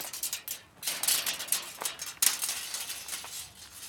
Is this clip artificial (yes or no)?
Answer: no